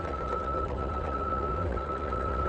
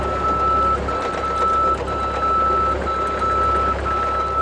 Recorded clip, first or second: second